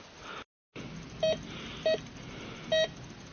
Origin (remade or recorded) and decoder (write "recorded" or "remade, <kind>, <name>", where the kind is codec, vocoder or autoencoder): recorded